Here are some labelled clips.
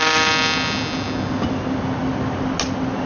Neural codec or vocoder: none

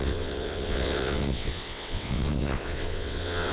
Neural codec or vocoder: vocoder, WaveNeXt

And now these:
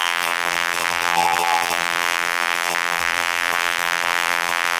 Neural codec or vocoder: vocoder, BigVGAN v2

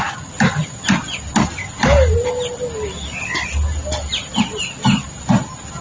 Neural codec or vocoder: none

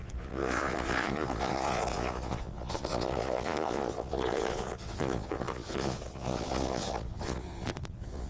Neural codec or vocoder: vocoder, Vocos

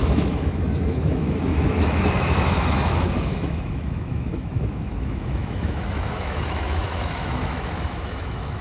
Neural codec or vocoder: autoencoder, DAC-VAE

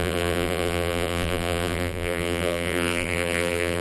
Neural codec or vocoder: vocoder, BigVGAN v2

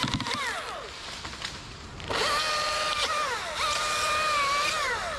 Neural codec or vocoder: none